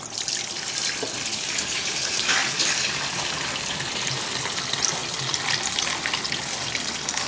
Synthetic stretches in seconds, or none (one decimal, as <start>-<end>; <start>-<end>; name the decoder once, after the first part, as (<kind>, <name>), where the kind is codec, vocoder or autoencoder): 1.3-3.0 (codec, DAC)